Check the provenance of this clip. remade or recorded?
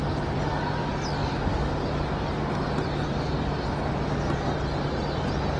recorded